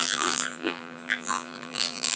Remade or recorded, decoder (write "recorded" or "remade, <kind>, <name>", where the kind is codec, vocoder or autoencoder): remade, vocoder, BigVGAN v2